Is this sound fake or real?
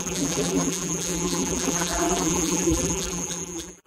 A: fake